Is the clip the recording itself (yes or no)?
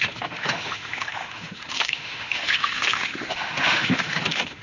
no